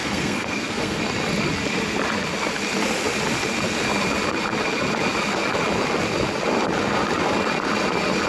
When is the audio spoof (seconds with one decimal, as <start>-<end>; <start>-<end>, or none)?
0.0-1.0